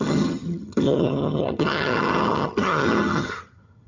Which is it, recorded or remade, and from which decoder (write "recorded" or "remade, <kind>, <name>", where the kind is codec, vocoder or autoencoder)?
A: remade, vocoder, HiFi-GAN